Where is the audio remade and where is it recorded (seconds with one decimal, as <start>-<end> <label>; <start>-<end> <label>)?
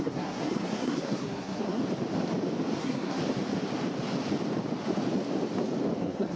0.0-1.8 remade; 1.8-2.8 recorded; 2.8-3.2 remade; 3.2-6.0 recorded; 6.0-6.4 remade